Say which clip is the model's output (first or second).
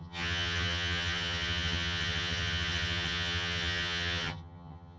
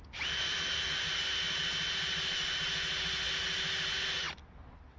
first